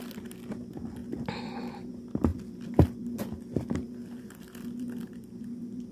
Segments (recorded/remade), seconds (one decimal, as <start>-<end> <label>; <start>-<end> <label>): 0.0-1.0 recorded; 1.0-1.9 remade; 1.9-2.3 recorded; 2.3-5.9 remade